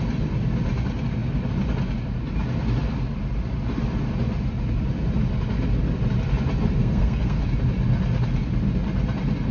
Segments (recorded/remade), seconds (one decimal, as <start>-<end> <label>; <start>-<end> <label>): 0.0-6.8 recorded; 6.8-7.4 remade; 7.4-9.5 recorded